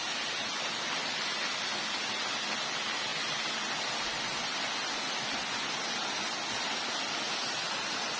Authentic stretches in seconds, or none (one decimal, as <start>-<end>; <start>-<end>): 0.0-8.2

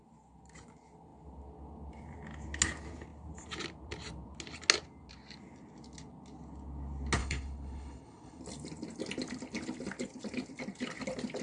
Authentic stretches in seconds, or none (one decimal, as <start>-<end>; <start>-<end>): 0.0-7.2; 8.4-11.4

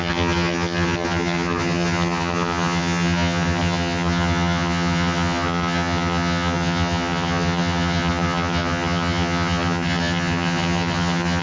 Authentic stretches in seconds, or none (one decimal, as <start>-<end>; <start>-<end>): none

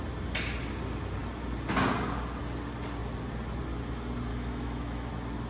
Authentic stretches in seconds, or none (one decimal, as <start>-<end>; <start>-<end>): 0.0-4.3; 5.1-5.5

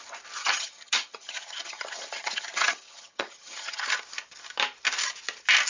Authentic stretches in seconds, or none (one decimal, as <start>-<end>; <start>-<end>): 0.0-0.4; 3.8-5.7

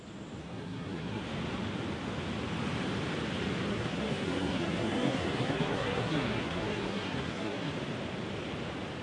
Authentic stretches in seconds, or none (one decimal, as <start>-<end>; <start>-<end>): 0.0-0.4; 1.2-3.7; 7.7-9.0